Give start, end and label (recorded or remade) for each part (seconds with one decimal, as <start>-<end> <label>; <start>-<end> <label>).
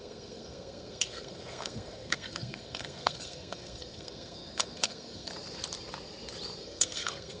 0.0-5.3 remade; 5.3-6.6 recorded; 6.6-7.4 remade